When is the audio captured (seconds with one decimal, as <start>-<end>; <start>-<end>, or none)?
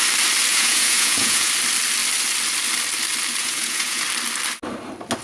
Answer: 0.0-0.5; 1.5-3.4; 4.0-5.2